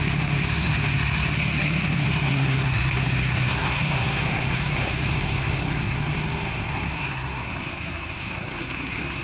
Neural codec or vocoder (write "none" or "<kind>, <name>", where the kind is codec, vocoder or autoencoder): codec, SNAC